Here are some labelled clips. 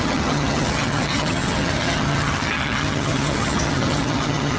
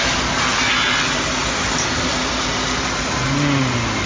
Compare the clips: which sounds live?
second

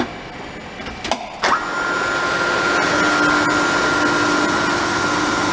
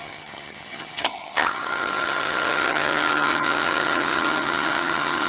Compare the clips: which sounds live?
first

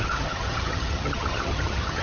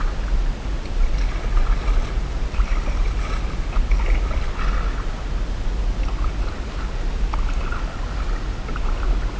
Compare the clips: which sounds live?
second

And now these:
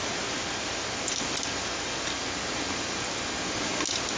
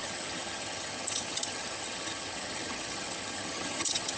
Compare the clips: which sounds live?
first